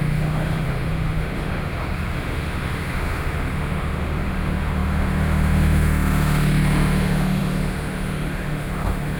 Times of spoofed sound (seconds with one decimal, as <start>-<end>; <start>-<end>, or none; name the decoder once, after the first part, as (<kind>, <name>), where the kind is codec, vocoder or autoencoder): 0.0-9.2 (autoencoder, DAC-VAE)